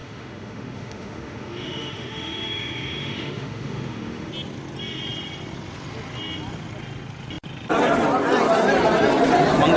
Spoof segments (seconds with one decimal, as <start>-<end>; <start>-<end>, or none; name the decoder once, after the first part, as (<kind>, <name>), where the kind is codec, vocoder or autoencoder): 0.0-4.3 (autoencoder, DAC-VAE)

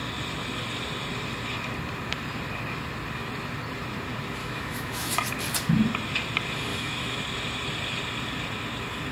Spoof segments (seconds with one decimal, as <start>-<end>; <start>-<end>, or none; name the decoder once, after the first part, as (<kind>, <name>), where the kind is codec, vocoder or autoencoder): 4.4-5.2 (autoencoder, DAC-VAE); 6.7-7.2

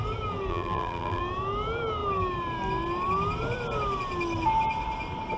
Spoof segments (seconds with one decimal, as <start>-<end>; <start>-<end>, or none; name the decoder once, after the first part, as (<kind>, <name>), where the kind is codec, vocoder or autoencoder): 0.5-1.2 (vocoder, BigVGAN v2)

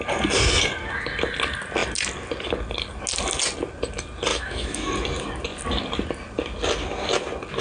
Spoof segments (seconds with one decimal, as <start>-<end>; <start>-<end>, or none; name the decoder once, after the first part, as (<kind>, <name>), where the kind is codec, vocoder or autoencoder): 4.3-4.9 (autoencoder, DAC-VAE)